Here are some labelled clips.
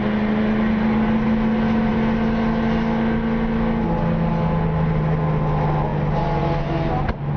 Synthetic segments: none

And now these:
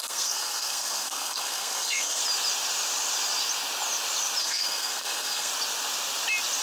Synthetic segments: 0.0-2.2 (codec, SNAC); 4.4-5.5

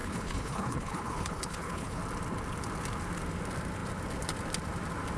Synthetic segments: 0.0-2.0 (codec, HILCodec)